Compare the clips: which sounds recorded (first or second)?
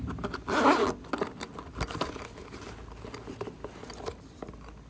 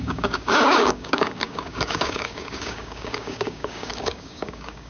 first